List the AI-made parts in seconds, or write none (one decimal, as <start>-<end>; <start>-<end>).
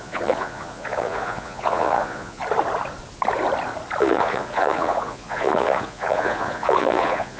0.0-2.4; 4.0-7.4